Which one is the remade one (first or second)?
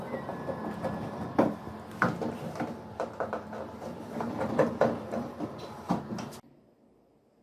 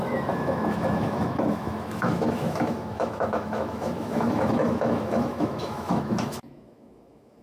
second